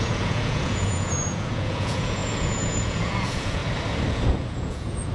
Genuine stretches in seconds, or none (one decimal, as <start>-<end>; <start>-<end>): 3.6-4.1